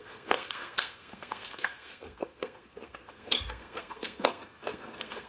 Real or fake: fake